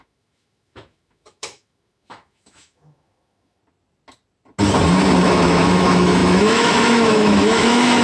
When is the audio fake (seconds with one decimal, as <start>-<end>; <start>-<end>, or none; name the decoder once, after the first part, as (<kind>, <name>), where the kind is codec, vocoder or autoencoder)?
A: 0.0-3.6 (autoencoder, DAC-VAE); 5.2-8.0